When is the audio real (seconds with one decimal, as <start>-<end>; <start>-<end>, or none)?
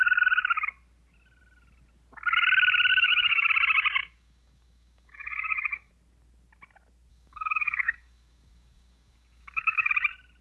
0.0-2.9; 3.5-4.0; 5.9-7.1; 9.9-10.4